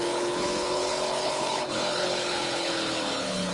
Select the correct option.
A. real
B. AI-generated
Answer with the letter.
B